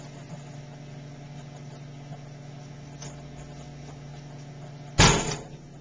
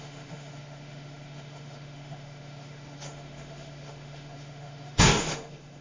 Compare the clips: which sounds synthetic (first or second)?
second